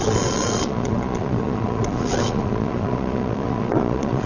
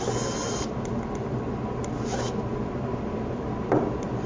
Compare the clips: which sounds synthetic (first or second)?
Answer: first